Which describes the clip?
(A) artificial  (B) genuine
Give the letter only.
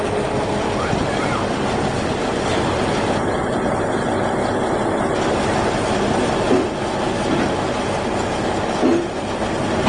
B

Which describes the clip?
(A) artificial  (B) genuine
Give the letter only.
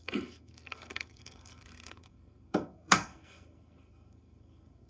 A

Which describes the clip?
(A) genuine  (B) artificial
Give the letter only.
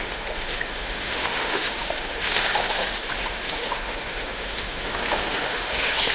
B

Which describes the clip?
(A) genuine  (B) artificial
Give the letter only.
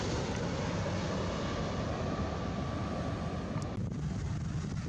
A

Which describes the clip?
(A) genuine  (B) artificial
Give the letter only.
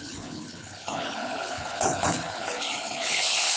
B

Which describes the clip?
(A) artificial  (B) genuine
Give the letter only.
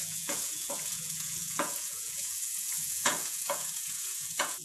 A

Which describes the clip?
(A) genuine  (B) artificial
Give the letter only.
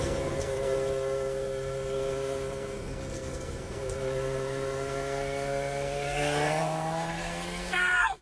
B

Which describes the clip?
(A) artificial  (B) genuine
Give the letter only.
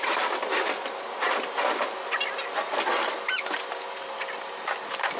B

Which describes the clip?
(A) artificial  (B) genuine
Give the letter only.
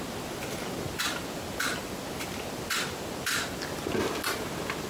B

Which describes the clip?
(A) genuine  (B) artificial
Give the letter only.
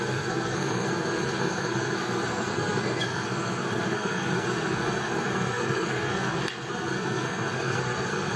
B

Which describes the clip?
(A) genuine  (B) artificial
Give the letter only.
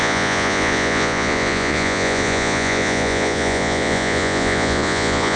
B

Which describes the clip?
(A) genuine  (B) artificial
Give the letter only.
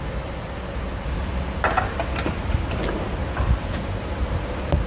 A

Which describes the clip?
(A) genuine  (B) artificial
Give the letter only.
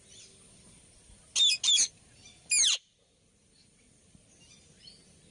A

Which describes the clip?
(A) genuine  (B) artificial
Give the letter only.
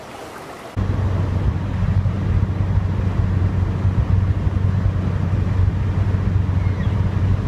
A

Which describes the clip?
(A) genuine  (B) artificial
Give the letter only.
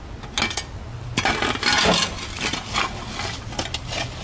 A